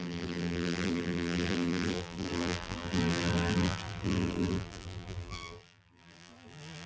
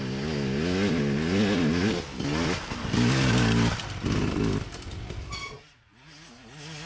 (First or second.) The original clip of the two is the second